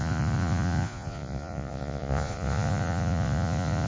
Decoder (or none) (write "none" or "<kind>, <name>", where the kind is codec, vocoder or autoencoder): vocoder, Vocos